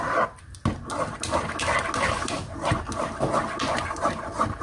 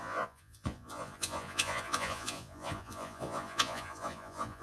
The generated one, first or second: second